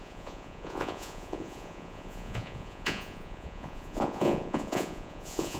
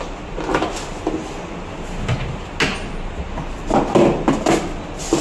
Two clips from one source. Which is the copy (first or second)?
first